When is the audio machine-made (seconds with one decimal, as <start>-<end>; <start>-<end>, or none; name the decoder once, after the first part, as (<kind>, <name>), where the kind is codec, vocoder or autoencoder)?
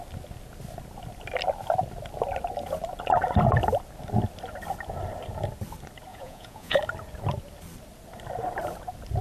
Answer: 6.1-6.8 (vocoder, Vocos)